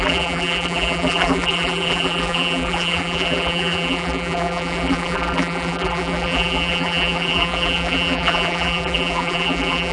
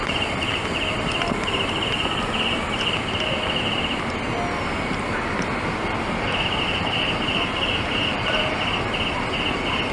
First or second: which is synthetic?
first